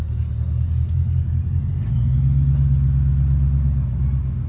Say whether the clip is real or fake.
real